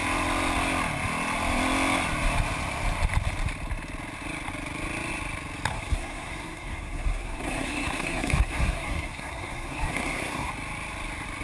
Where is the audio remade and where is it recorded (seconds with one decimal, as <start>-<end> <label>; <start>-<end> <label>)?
0.0-5.7 recorded; 5.7-10.5 remade; 10.5-11.4 recorded